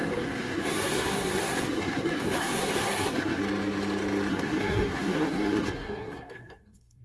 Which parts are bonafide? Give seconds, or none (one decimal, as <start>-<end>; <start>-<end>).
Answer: 3.4-4.3